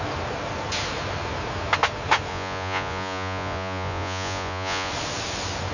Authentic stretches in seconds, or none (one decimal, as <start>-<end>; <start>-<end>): 0.0-2.3; 4.9-5.7